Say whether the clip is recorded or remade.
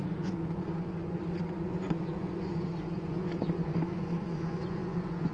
remade